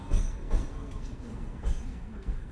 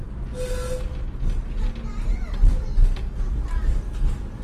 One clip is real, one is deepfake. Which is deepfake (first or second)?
first